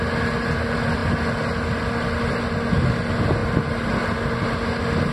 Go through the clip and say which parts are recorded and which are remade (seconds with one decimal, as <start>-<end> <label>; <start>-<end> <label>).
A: 0.0-5.1 recorded